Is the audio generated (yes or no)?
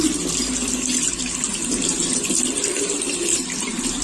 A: no